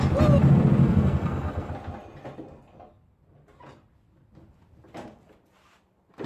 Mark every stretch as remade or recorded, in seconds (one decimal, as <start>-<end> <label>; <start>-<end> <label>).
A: 0.0-0.8 recorded; 0.8-1.7 remade; 1.7-6.3 recorded